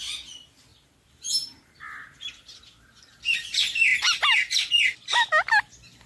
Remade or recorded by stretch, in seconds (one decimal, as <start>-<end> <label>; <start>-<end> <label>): 0.0-6.1 recorded